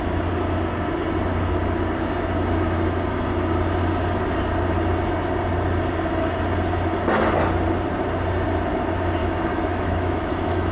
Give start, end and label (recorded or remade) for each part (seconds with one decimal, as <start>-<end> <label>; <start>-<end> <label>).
0.0-9.2 recorded; 9.2-10.7 remade